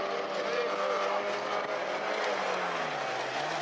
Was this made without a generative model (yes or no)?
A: yes